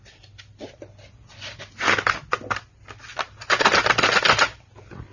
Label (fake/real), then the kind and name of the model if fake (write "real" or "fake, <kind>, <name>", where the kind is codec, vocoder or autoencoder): real